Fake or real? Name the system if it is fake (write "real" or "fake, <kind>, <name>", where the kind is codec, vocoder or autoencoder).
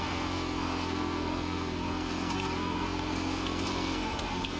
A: fake, codec, SNAC